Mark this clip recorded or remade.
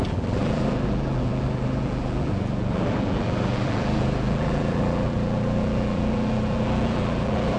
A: remade